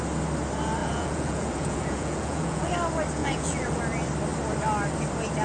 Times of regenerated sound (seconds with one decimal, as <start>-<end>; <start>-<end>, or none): 0.8-2.7; 3.2-3.8